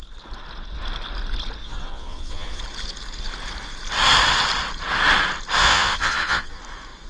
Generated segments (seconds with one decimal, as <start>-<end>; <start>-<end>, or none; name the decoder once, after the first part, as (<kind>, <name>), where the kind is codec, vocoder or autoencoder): 1.6-2.6 (vocoder, Vocos); 5.6-6.6